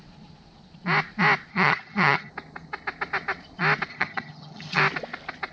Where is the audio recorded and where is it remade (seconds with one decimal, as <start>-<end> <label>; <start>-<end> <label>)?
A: 0.0-1.5 recorded; 1.5-2.3 remade; 2.3-3.9 recorded; 3.9-4.8 remade; 4.8-5.5 recorded